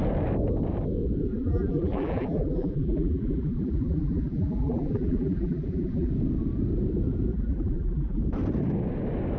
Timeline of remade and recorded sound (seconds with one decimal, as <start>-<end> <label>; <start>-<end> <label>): 0.0-1.3 recorded; 1.3-6.1 remade; 6.1-7.3 recorded; 7.3-8.2 remade; 8.2-9.4 recorded